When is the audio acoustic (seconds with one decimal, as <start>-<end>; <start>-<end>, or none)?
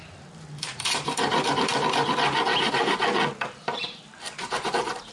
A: 1.7-3.3